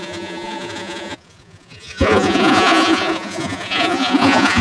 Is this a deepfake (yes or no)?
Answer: yes